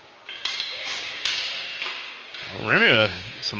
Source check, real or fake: fake